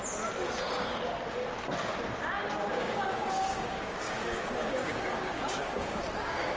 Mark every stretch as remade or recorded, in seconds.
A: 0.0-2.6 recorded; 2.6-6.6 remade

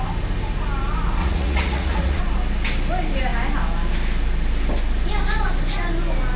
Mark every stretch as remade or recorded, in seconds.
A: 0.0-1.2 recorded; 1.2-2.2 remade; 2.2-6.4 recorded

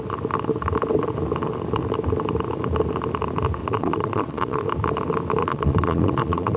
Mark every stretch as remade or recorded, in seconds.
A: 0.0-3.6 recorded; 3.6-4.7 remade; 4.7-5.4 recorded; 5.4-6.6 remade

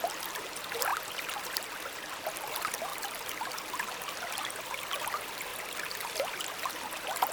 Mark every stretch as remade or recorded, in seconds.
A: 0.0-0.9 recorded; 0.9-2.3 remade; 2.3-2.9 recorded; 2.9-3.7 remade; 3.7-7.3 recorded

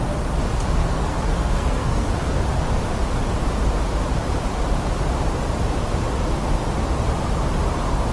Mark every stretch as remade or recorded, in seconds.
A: 0.0-0.8 recorded; 0.8-2.1 remade; 2.1-8.1 recorded

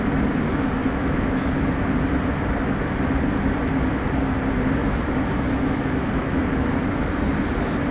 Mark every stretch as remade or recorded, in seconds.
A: 0.0-0.8 recorded; 0.8-1.5 remade; 1.5-4.8 recorded; 4.8-6.4 remade; 6.4-7.9 recorded

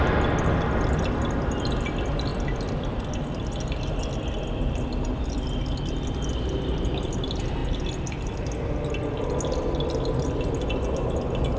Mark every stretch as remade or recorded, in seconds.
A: 0.0-11.6 recorded